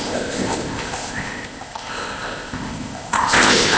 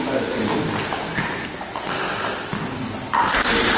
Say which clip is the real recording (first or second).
second